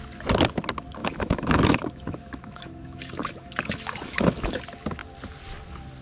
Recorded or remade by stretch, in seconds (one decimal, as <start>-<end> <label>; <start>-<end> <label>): 0.0-1.0 recorded; 1.0-4.6 remade; 4.6-6.0 recorded